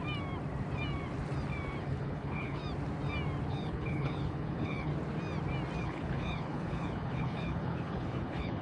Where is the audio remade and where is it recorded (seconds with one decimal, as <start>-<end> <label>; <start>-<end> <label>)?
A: 0.0-1.8 recorded; 1.8-2.6 remade; 2.6-3.5 recorded; 3.5-4.9 remade; 4.9-5.8 recorded; 5.8-8.6 remade